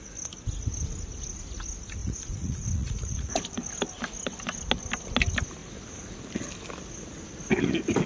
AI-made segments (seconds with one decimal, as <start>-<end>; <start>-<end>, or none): 2.0-3.4